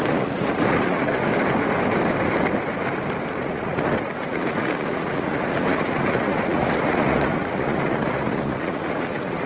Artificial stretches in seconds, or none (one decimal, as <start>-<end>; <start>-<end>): 0.0-1.3; 3.3-9.5